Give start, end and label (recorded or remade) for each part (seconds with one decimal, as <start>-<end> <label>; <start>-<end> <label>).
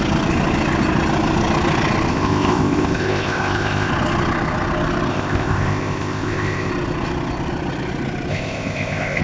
0.0-2.1 recorded; 2.1-3.9 remade; 3.9-5.1 recorded; 5.1-6.7 remade; 6.7-8.3 recorded; 8.3-9.2 remade